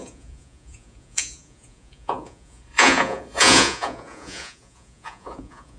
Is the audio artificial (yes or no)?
yes